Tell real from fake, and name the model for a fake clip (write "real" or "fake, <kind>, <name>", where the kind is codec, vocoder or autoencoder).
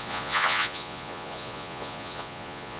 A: fake, vocoder, Vocos